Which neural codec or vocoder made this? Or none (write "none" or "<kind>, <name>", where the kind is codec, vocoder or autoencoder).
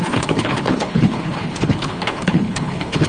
codec, HILCodec